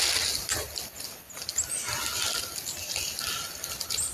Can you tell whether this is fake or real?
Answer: real